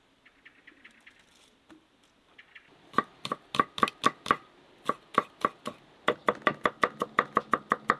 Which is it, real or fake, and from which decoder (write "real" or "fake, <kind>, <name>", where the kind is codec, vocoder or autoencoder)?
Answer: real